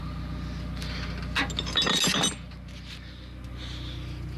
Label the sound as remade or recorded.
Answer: recorded